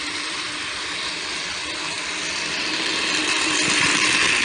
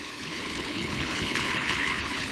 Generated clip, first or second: second